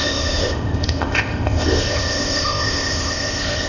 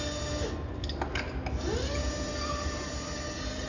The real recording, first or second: second